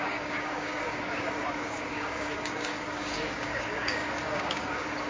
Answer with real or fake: fake